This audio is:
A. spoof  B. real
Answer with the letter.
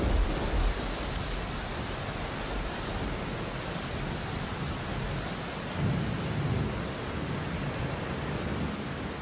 B